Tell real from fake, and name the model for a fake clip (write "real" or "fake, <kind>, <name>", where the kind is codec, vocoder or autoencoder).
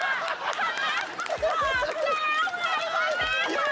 real